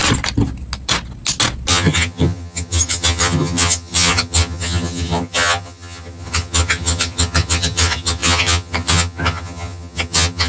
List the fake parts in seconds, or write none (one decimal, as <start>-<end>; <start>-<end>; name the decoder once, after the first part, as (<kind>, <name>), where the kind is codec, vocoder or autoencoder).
1.7-10.5 (vocoder, HiFi-GAN)